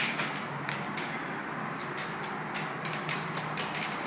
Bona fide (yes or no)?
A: yes